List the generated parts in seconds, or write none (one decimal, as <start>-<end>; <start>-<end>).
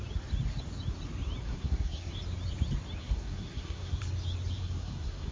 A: 1.4-2.1; 3.0-4.0; 4.6-5.3